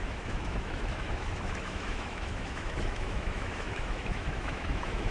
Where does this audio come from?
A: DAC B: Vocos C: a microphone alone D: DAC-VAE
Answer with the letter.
D